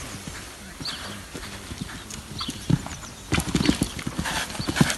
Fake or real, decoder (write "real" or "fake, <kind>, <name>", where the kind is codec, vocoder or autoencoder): real